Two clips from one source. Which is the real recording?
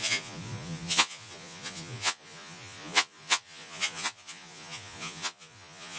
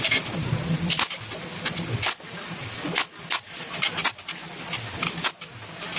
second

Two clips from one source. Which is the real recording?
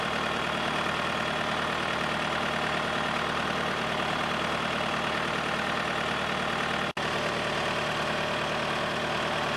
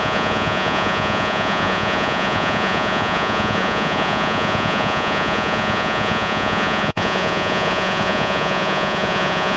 first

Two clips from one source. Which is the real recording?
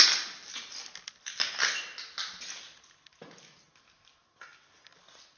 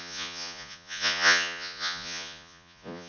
first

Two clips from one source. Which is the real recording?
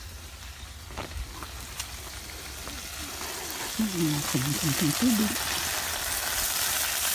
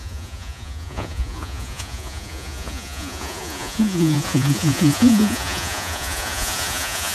first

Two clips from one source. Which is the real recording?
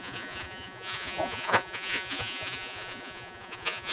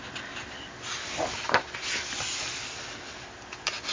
second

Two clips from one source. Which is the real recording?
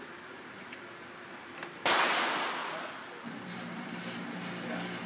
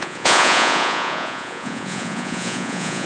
first